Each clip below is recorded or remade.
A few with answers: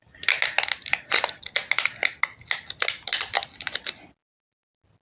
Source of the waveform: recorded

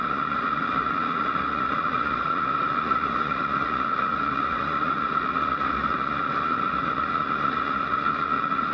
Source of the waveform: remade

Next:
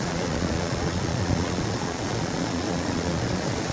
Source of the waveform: remade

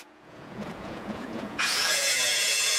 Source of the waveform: remade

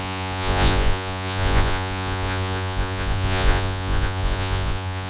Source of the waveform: remade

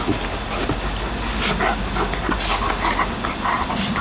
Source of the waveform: recorded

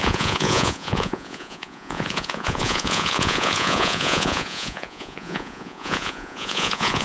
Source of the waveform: remade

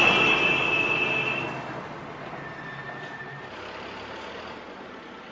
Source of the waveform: recorded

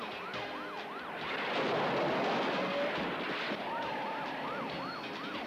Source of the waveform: recorded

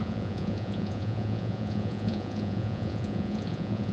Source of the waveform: remade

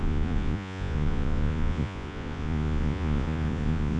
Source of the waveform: remade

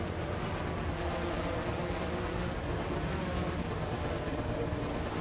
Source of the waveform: recorded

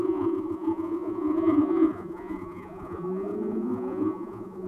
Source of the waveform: remade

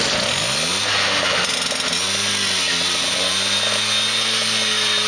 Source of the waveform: recorded